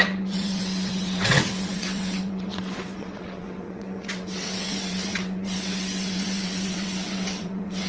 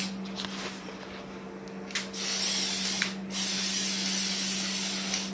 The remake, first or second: first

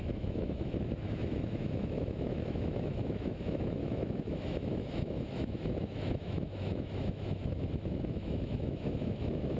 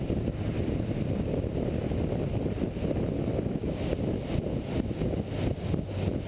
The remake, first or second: first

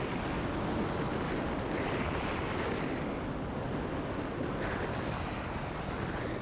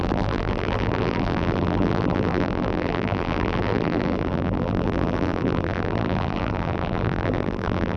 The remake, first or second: second